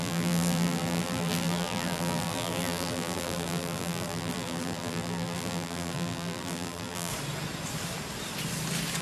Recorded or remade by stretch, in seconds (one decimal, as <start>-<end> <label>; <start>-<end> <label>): 0.0-7.1 remade; 7.1-9.0 recorded